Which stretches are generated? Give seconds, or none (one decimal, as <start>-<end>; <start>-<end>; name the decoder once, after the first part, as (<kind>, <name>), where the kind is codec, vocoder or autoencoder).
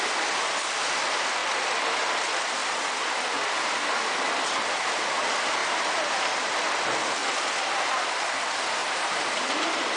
5.6-6.5 (vocoder, BigVGAN v2); 8.8-10.0